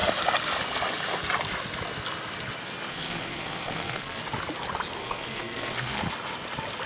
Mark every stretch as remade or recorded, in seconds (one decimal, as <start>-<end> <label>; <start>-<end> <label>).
0.0-2.9 recorded; 2.9-4.2 remade; 4.2-5.0 recorded; 5.0-6.0 remade; 6.0-6.9 recorded